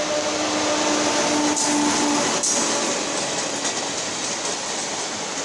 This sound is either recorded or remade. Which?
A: recorded